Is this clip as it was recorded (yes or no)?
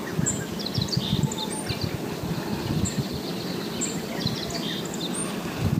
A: yes